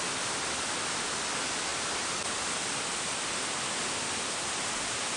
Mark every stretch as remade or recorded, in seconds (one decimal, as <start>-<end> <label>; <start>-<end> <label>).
0.0-5.2 recorded